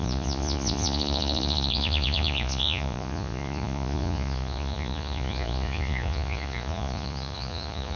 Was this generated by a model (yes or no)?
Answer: yes